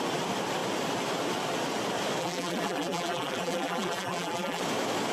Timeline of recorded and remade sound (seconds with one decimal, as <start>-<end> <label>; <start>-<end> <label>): 0.0-2.2 recorded; 2.2-4.6 remade; 4.6-5.1 recorded